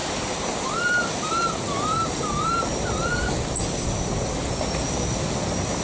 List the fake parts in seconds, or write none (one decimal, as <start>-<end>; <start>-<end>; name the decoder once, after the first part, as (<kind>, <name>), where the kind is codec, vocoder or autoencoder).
none